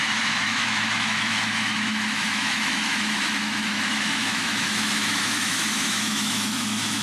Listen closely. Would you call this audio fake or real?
fake